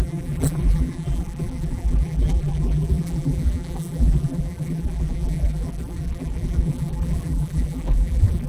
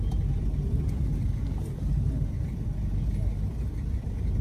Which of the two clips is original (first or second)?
second